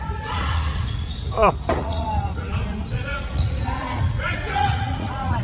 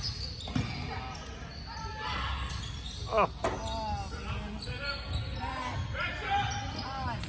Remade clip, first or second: first